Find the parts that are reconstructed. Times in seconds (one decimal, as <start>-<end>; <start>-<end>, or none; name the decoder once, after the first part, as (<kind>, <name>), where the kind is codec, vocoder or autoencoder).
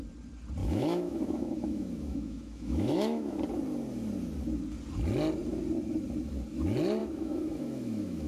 0.6-3.4 (autoencoder, DAC-VAE); 7.0-8.3